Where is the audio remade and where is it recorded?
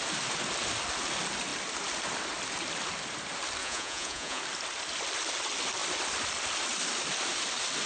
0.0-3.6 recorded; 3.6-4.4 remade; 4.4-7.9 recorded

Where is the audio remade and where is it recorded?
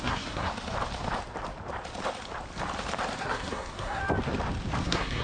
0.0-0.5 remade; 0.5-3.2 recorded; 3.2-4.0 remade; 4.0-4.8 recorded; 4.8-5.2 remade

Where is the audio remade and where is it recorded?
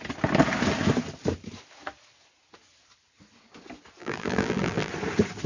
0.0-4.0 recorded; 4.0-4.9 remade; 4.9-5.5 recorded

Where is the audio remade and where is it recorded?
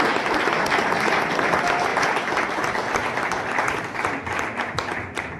0.0-5.4 recorded